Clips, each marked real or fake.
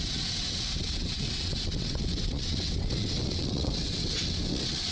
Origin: fake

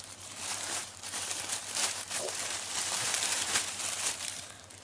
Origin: fake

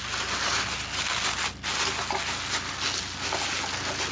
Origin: real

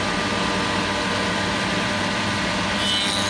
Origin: real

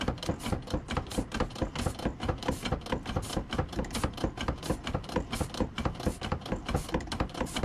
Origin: real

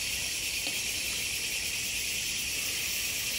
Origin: real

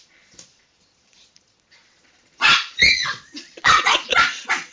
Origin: fake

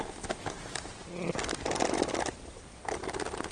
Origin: real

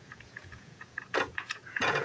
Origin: fake